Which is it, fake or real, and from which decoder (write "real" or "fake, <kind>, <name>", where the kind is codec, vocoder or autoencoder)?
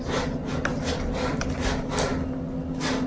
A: real